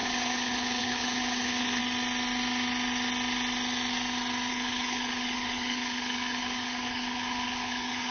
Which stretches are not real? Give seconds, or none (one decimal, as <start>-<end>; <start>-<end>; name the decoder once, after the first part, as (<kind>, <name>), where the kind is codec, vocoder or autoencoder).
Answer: 0.0-1.8 (codec, HILCodec); 4.5-8.1

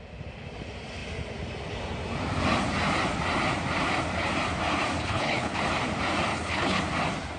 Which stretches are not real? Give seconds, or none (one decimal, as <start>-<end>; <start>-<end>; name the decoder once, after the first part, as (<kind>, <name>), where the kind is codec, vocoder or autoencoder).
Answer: 5.0-5.6 (codec, HILCodec); 6.3-6.8

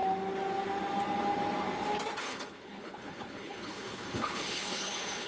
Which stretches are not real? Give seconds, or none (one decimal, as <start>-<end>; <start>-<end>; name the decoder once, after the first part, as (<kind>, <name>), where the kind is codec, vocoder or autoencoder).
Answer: 2.2-5.3 (codec, HILCodec)